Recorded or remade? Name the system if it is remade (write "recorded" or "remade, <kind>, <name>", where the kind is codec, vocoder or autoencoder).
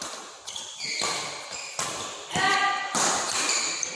recorded